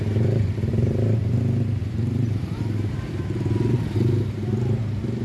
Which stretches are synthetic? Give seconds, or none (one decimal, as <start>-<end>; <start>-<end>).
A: 0.7-1.4; 1.8-3.8